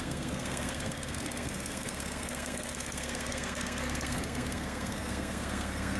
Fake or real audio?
fake